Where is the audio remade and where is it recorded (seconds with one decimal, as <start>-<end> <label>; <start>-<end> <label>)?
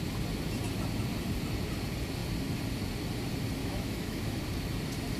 0.0-3.6 recorded; 3.6-4.4 remade; 4.4-5.2 recorded